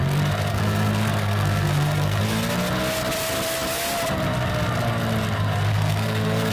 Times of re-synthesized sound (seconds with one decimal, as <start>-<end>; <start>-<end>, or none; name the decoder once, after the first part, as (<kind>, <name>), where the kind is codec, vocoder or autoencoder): 0.5-2.2 (codec, SNAC); 5.7-6.5